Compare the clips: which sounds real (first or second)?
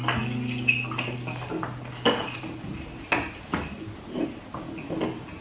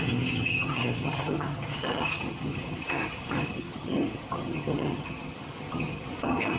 first